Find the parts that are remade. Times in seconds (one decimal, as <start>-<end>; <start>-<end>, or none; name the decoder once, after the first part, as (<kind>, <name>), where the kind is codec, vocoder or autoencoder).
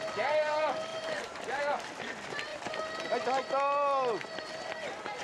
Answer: 0.9-1.6 (vocoder, BigVGAN v2); 2.5-3.0